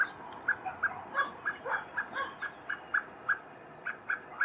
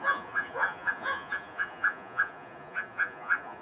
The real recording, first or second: first